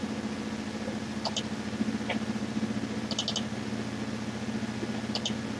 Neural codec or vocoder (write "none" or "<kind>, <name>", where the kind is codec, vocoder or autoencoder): none